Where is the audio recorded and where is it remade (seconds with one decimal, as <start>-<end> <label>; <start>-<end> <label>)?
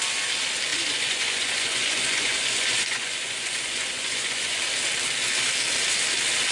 0.0-0.7 recorded; 0.7-4.6 remade; 4.6-6.5 recorded